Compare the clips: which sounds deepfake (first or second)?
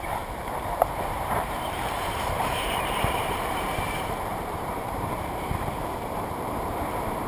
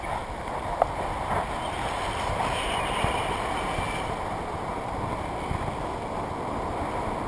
first